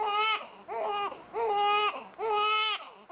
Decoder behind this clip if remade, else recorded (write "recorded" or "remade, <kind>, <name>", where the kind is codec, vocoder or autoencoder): recorded